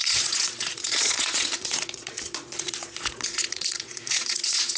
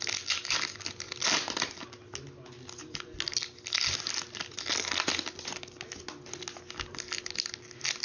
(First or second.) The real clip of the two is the second